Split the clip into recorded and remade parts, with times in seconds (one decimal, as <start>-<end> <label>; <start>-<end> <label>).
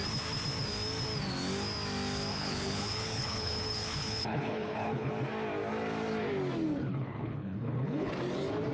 0.0-2.3 recorded; 2.3-5.1 remade; 5.1-6.9 recorded; 6.9-8.1 remade; 8.1-8.7 recorded